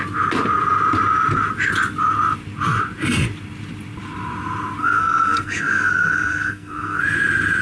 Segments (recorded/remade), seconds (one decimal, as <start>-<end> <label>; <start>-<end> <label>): 0.0-4.8 recorded; 4.8-7.0 remade; 7.0-7.6 recorded